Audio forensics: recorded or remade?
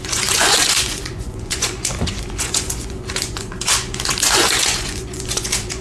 remade